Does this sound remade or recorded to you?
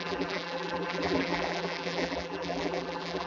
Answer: remade